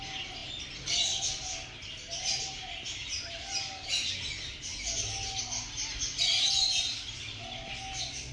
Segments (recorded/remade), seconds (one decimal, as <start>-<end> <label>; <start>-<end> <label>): 0.0-8.3 recorded

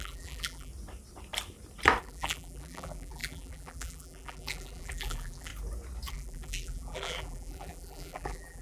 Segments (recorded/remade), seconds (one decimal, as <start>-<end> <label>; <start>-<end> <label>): 0.0-0.7 remade; 0.7-2.0 recorded; 2.0-5.5 remade; 5.5-6.1 recorded; 6.1-8.6 remade

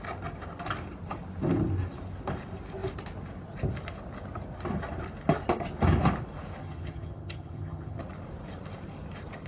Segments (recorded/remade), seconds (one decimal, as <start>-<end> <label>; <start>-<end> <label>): 0.0-6.6 recorded; 6.6-8.0 remade; 8.0-9.5 recorded

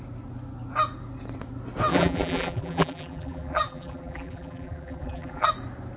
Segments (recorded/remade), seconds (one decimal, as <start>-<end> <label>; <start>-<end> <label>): 0.0-1.9 recorded; 1.9-5.5 remade; 5.5-6.0 recorded

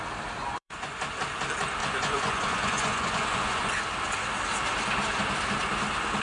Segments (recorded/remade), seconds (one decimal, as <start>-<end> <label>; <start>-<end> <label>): 0.0-0.4 recorded; 0.4-1.0 remade; 1.0-1.8 recorded; 1.8-3.7 remade; 3.7-6.2 recorded

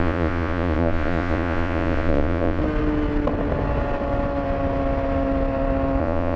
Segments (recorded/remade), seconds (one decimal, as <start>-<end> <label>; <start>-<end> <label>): 0.0-2.6 remade; 2.6-6.0 recorded; 6.0-6.4 remade

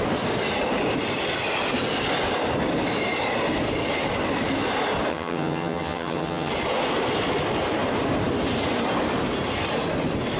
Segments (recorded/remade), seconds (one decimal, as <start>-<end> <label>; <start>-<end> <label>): 0.0-5.1 recorded; 5.1-6.5 remade; 6.5-10.4 recorded